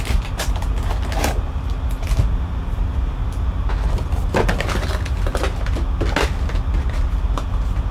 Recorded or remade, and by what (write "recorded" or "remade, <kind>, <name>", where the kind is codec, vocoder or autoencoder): recorded